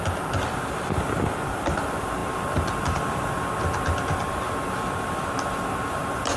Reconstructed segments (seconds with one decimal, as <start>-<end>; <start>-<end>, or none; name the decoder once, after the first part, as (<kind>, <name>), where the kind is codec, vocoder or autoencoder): none